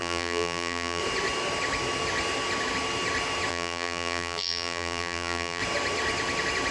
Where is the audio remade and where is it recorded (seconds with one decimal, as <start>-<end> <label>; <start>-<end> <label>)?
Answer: 0.0-1.0 remade; 1.0-3.5 recorded; 3.5-5.6 remade; 5.6-6.7 recorded